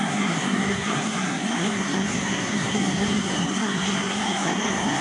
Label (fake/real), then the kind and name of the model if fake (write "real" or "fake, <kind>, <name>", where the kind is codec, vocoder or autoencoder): fake, codec, SNAC